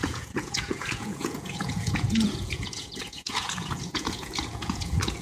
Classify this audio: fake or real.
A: fake